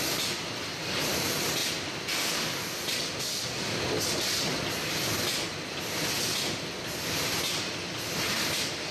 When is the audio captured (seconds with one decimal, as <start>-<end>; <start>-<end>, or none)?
0.0-8.9